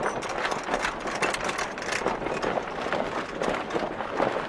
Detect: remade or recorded remade